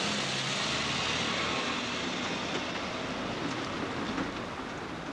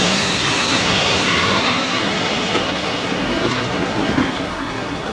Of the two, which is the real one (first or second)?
first